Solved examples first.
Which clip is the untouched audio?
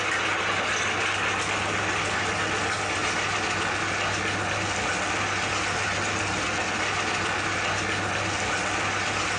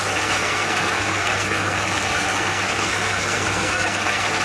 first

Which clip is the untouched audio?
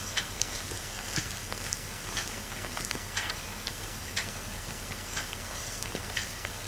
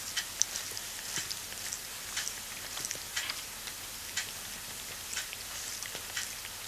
second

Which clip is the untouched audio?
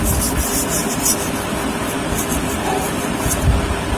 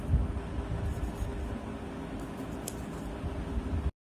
second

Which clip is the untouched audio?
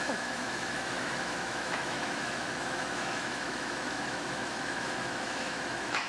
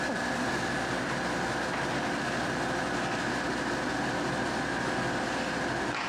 second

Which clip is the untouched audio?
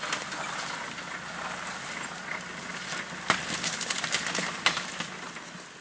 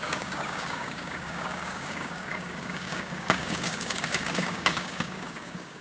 first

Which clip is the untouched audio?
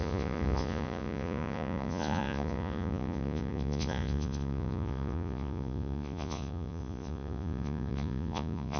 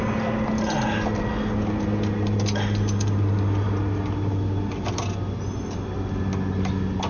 second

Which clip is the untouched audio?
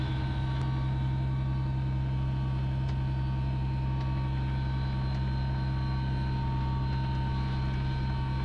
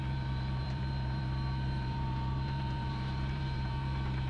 first